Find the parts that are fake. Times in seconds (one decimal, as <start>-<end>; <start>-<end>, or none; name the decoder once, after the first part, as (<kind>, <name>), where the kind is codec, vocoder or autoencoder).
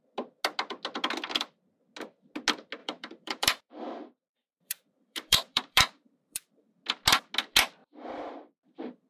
2.8-6.8 (vocoder, BigVGAN v2)